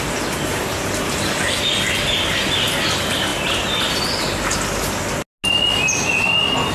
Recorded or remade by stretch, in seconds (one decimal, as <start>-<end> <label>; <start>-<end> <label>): 0.0-6.7 recorded

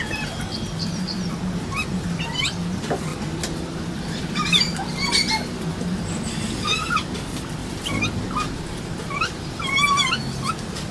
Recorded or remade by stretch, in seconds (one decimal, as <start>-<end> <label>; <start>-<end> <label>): 0.0-5.7 recorded; 5.7-6.7 remade; 6.7-7.6 recorded; 7.6-8.8 remade; 8.8-10.9 recorded